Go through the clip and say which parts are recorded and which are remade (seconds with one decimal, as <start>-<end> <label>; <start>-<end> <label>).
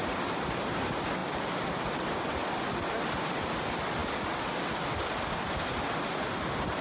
0.0-6.8 recorded